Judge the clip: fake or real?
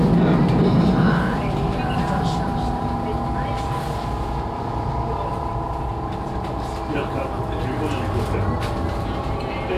real